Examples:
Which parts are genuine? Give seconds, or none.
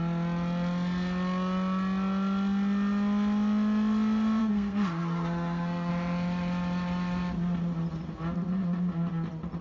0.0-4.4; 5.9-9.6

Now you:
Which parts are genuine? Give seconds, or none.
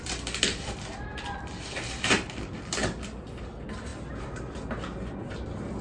0.0-5.8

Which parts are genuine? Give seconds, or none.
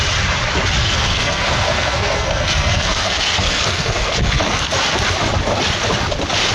0.0-0.8; 4.7-6.5